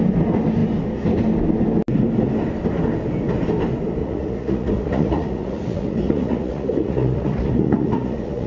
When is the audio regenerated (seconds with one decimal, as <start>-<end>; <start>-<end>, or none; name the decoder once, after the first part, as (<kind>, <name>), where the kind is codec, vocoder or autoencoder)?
4.0-8.5 (vocoder, Vocos)